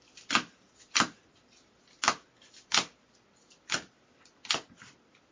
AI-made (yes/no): no